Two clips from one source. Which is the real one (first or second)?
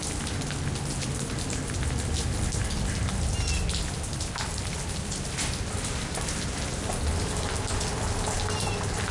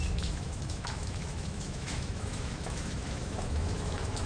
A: first